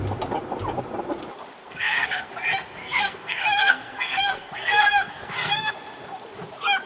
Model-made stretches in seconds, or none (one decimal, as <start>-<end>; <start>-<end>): 1.6-2.3; 2.8-5.7

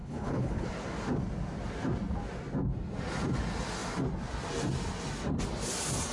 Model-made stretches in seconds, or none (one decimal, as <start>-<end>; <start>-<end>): 0.0-0.7

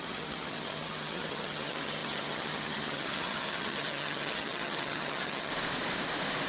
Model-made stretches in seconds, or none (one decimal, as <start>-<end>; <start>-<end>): 0.0-5.5

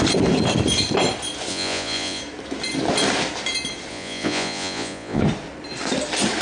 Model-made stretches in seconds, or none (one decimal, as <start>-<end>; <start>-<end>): 1.5-2.2; 3.9-5.2

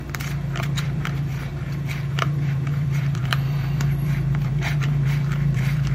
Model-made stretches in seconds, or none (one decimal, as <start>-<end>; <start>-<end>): 0.0-1.5; 2.1-5.9

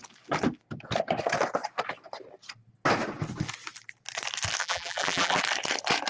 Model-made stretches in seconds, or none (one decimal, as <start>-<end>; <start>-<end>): 4.6-5.4

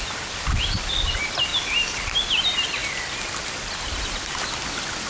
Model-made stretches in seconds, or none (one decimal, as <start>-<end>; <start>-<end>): none

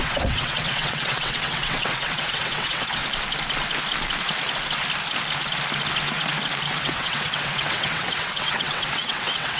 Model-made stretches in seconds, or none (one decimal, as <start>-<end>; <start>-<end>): 0.0-3.0; 6.8-9.6